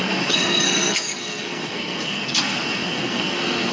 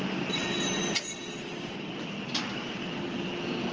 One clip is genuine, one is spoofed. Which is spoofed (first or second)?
first